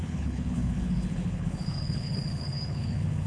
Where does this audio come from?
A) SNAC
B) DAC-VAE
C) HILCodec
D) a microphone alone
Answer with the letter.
C